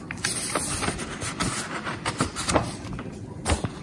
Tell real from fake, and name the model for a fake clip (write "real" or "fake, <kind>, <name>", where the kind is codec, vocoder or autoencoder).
fake, vocoder, BigVGAN v2